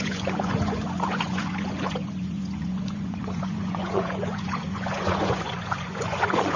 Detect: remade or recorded remade